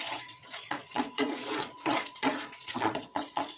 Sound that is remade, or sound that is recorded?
remade